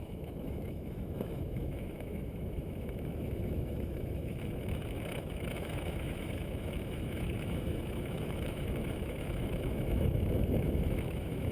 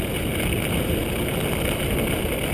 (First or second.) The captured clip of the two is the second